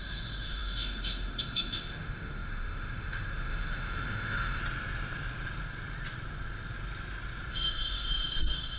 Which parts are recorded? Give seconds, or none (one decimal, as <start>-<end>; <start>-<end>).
4.6-7.5